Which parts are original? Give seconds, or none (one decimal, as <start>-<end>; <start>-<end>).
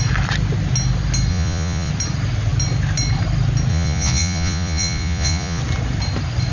0.0-1.3; 1.9-3.7; 5.6-6.5